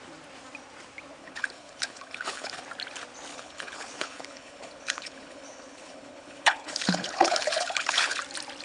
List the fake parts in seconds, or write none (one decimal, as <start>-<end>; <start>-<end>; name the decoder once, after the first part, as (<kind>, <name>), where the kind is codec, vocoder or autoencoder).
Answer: 1.2-2.6 (codec, HILCodec); 3.3-8.2